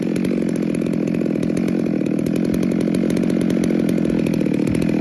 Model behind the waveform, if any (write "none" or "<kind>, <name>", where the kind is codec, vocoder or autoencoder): none